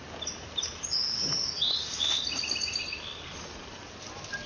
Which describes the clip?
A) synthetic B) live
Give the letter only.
B